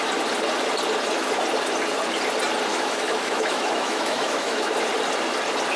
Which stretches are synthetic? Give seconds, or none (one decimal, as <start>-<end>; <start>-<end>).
2.7-4.7